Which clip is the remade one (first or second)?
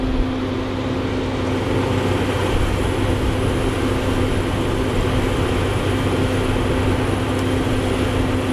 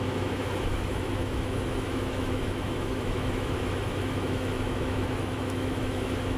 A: second